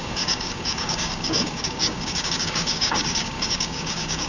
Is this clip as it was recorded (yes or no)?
no